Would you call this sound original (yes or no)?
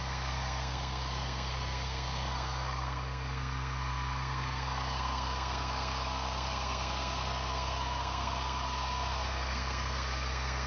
no